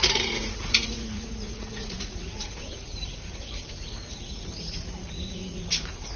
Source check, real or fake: fake